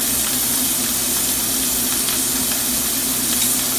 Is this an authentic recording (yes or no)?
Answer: yes